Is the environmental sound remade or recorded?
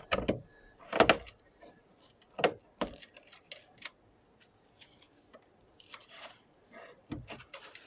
recorded